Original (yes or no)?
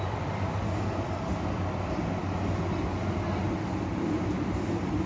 yes